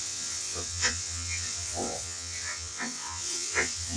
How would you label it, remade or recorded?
remade